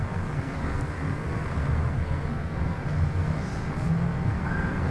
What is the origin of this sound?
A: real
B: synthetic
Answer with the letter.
B